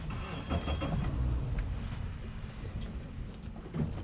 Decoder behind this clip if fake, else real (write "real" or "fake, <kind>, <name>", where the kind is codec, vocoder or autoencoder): real